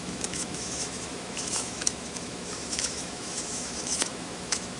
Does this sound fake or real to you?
fake